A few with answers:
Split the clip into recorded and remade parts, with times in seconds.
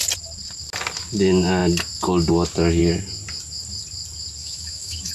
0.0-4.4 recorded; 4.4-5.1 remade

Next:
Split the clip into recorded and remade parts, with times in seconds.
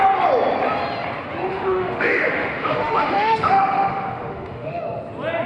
0.0-1.5 recorded; 1.5-4.8 remade; 4.8-5.5 recorded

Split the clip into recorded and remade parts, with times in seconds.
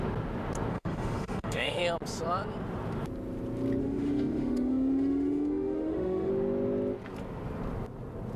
0.0-0.7 recorded; 0.7-1.8 remade; 1.8-3.8 recorded; 3.8-6.3 remade; 6.3-8.4 recorded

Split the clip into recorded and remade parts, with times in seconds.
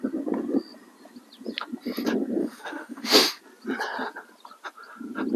0.0-2.4 recorded; 2.4-3.4 remade; 3.4-5.4 recorded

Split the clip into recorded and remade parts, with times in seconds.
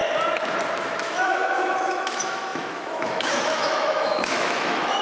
0.0-0.7 recorded; 0.7-5.0 remade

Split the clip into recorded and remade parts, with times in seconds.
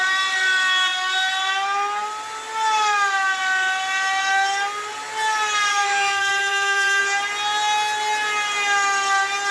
0.0-5.7 recorded; 5.7-7.0 remade; 7.0-9.5 recorded